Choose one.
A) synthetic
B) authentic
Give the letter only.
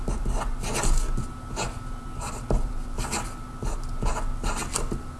B